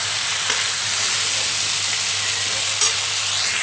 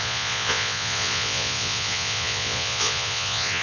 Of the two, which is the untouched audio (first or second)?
first